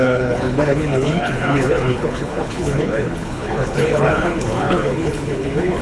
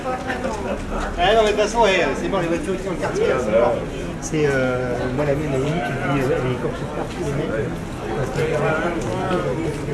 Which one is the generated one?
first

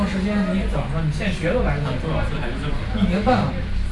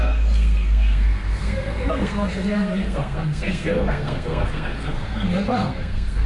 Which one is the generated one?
second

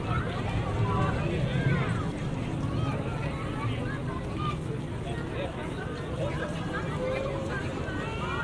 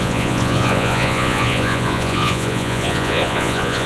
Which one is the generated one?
second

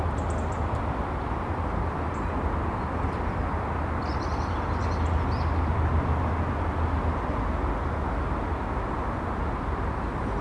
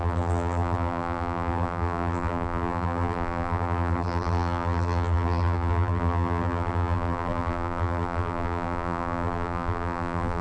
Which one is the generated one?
second